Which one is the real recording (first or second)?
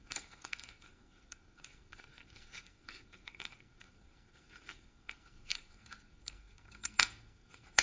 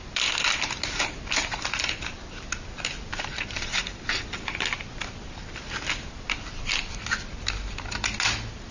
second